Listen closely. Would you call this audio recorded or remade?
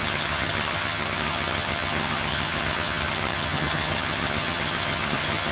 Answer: remade